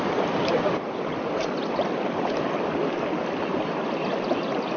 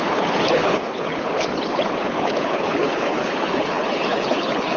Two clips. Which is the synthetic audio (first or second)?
second